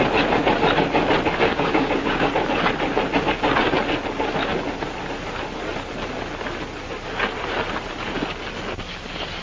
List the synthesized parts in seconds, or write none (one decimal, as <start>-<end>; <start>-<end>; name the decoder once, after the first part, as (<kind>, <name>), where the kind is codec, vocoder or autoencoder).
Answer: 1.5-2.3 (codec, DAC)